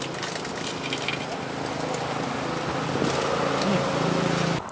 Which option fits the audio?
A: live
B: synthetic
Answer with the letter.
A